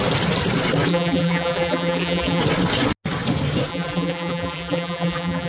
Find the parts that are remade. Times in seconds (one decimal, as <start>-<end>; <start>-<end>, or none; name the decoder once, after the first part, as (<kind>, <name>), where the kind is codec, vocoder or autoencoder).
0.9-2.4 (vocoder, BigVGAN v2); 3.7-5.5